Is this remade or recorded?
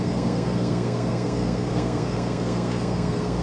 remade